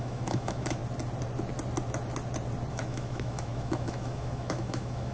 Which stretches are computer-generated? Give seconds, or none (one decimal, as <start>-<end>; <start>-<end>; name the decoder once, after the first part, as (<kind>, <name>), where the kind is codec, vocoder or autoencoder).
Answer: 0.0-0.8 (autoencoder, DAC-VAE); 2.7-5.1